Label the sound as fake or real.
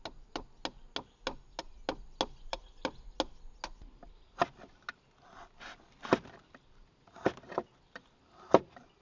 real